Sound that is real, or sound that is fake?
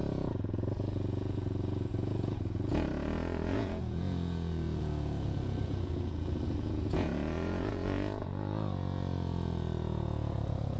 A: fake